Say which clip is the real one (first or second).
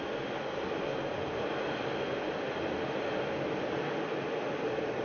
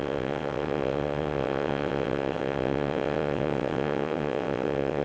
first